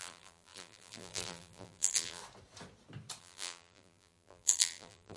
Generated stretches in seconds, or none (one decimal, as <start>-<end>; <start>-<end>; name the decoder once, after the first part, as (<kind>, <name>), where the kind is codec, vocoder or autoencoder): 0.0-2.2 (vocoder, BigVGAN v2); 3.2-5.2